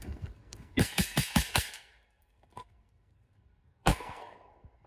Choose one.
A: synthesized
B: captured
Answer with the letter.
A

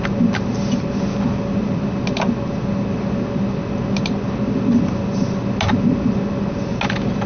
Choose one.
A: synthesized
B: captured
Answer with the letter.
B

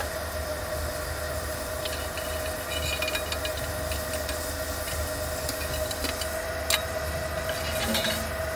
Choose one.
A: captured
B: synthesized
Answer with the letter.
A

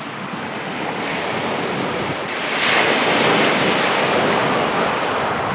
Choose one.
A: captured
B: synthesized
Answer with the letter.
A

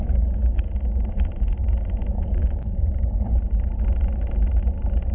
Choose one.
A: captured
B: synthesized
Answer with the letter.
A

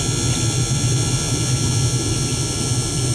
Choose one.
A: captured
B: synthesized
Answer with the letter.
A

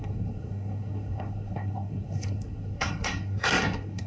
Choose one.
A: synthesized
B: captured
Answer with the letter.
A